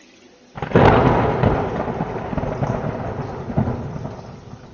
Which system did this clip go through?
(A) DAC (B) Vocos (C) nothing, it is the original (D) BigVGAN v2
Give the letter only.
C